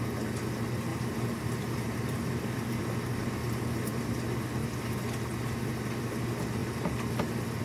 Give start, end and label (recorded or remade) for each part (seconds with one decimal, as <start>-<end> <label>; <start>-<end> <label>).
0.0-0.9 recorded; 0.9-2.8 remade; 2.8-7.6 recorded